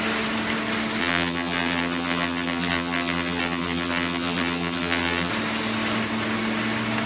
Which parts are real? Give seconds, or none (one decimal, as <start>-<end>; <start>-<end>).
0.0-1.0; 5.3-7.1